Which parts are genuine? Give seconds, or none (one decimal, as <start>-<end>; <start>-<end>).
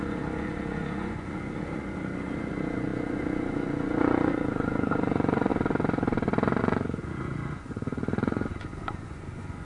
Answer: 5.5-6.6